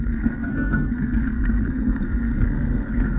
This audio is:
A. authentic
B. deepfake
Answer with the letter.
B